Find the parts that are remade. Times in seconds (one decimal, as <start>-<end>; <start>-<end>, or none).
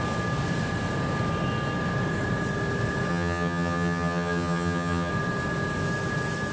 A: 3.1-5.1